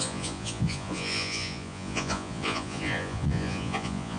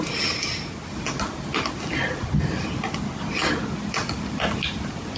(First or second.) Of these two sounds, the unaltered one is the second